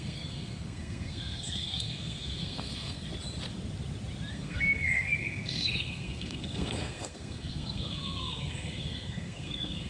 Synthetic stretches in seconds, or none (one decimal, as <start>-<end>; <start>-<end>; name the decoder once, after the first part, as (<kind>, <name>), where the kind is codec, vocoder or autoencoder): 0.0-3.1 (codec, SNAC); 4.3-9.9